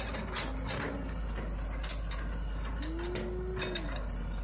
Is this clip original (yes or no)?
yes